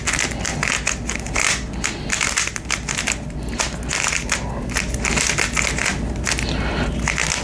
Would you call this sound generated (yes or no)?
no